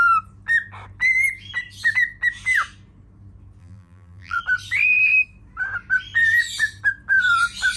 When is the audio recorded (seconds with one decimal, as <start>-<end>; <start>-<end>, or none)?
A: 0.0-3.6; 4.4-7.8